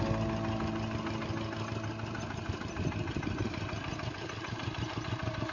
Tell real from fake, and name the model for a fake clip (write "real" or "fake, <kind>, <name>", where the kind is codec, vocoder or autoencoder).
real